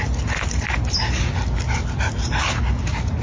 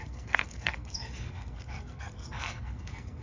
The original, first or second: first